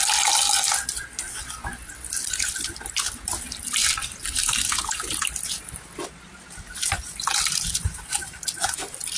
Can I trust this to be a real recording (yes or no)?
yes